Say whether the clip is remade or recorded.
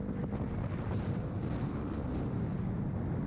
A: recorded